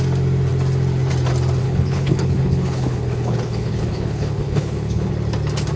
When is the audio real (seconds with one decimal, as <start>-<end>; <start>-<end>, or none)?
0.0-1.6; 5.1-5.8